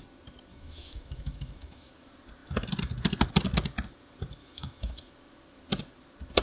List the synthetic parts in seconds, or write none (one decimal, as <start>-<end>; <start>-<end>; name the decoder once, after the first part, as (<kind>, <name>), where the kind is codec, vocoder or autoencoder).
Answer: 0.5-1.9 (autoencoder, DAC-VAE); 4.4-5.1